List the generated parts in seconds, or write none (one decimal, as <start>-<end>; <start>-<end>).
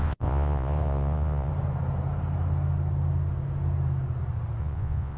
0.0-1.5; 4.6-5.2